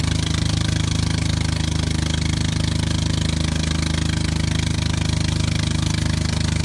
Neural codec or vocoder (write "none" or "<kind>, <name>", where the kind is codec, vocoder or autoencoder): none